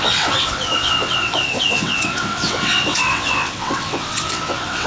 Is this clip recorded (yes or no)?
no